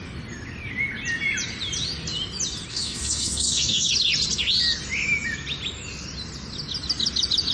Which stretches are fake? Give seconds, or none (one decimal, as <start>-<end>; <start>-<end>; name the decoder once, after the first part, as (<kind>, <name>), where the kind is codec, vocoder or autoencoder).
2.7-3.9 (codec, DAC)

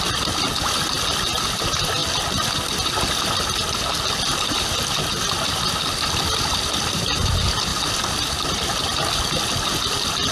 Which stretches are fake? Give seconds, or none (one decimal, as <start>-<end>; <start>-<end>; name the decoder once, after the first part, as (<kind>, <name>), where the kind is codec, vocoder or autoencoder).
none

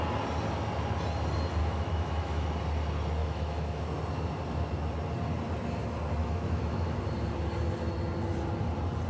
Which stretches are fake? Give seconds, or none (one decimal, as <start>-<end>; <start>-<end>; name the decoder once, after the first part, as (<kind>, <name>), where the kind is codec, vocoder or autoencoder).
1.6-2.5 (autoencoder, DAC-VAE); 3.2-3.8; 6.2-7.0

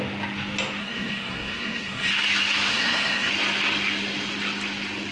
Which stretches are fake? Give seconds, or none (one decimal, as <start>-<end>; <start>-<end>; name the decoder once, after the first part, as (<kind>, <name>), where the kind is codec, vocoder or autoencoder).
0.8-2.1 (codec, SNAC); 2.7-3.3

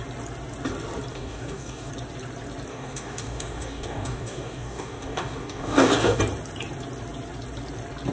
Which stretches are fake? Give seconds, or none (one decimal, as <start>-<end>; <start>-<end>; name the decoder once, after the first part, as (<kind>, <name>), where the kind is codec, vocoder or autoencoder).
1.1-1.9 (codec, DAC); 2.7-6.2